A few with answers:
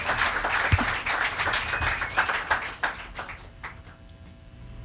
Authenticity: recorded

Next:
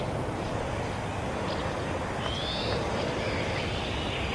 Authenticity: remade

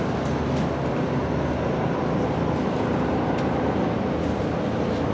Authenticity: recorded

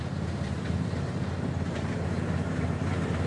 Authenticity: remade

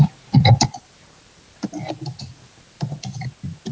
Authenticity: recorded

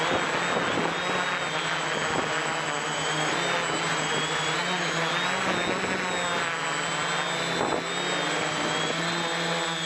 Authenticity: recorded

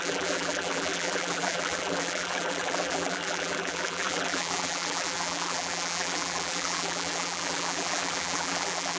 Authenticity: remade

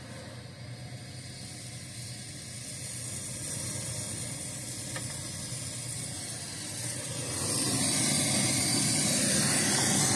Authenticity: recorded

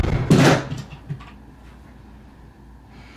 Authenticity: recorded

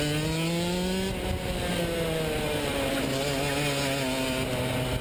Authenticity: recorded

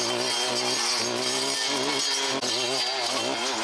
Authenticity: recorded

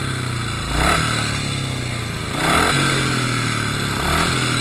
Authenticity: recorded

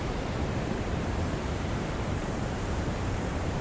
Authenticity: remade